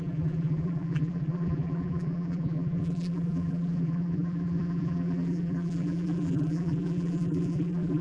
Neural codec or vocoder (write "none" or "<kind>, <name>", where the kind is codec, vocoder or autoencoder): vocoder, BigVGAN v2